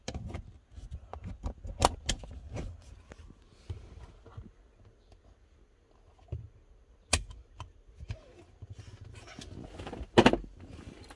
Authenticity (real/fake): real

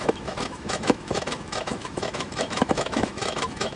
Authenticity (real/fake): fake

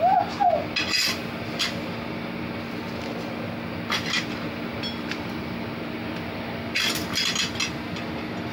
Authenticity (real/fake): real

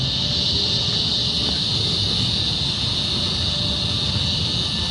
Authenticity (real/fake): real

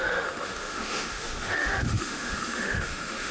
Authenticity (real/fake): fake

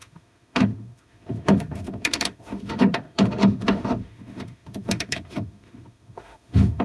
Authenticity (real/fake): fake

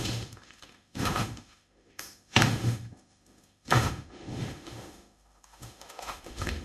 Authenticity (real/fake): fake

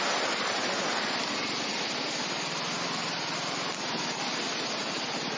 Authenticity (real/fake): real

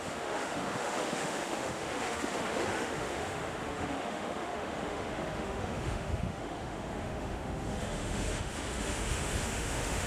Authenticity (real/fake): fake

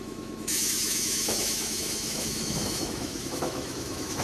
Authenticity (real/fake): fake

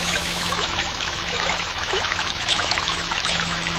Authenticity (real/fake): fake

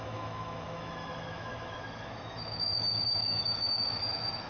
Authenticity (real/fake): fake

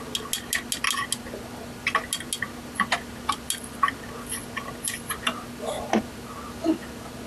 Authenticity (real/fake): real